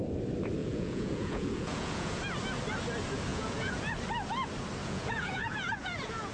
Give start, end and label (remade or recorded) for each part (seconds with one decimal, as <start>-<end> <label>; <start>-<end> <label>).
0.0-0.6 recorded; 0.6-2.2 remade; 2.2-3.3 recorded; 3.3-3.9 remade; 3.9-4.8 recorded; 4.8-6.3 remade